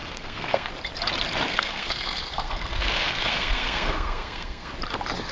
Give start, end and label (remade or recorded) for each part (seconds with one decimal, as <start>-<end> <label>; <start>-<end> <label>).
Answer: 0.0-0.7 remade; 0.7-1.5 recorded; 1.5-4.7 remade; 4.7-5.3 recorded